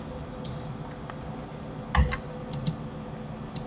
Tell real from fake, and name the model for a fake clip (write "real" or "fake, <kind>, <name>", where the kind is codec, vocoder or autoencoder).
real